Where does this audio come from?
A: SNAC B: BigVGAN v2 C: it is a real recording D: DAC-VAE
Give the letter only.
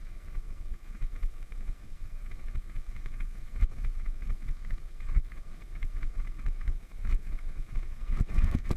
A